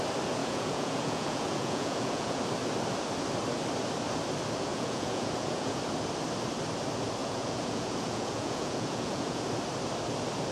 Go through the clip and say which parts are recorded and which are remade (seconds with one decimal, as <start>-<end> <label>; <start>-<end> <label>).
0.0-0.4 recorded; 0.4-2.4 remade; 2.4-4.7 recorded; 4.7-5.8 remade; 5.8-7.2 recorded; 7.2-9.4 remade; 9.4-10.5 recorded